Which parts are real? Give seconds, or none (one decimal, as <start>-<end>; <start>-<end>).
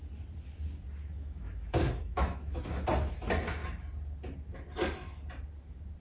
0.0-1.0; 2.8-6.0